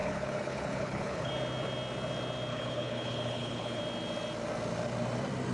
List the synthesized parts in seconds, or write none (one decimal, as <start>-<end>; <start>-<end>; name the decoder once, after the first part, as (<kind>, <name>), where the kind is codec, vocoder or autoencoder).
0.0-1.3 (codec, HILCodec); 2.5-3.8